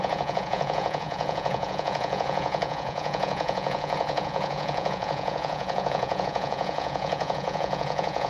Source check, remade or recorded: remade